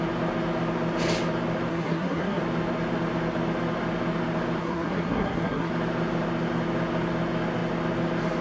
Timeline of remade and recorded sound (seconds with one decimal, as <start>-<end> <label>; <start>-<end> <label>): 0.0-1.7 recorded; 1.7-2.4 remade; 2.4-4.6 recorded; 4.6-5.7 remade; 5.7-8.4 recorded